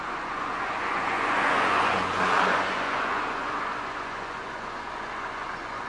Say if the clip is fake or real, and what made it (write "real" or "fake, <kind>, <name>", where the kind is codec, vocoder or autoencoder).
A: fake, vocoder, Vocos